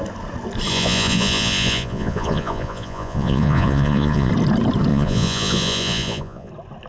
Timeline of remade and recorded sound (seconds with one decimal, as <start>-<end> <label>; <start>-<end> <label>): 0.0-0.7 recorded; 0.7-4.3 remade; 4.3-4.9 recorded; 4.9-6.5 remade; 6.5-6.9 recorded